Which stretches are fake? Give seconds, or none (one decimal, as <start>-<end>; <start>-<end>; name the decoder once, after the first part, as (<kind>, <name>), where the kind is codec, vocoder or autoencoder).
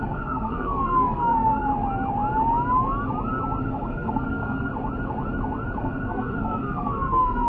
0.0-1.7 (codec, SNAC); 3.6-4.7; 5.8-7.5